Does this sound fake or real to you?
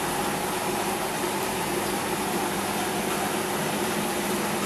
fake